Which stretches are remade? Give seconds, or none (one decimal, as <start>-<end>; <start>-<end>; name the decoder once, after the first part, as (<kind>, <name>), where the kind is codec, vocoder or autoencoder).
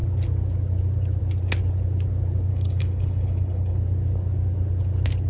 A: 2.5-3.8 (codec, HILCodec)